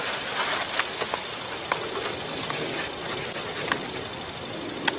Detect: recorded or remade recorded